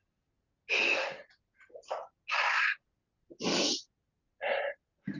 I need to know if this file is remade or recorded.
recorded